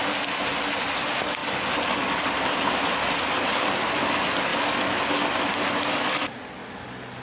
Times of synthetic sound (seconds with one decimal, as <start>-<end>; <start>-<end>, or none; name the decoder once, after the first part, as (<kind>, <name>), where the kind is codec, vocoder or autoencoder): none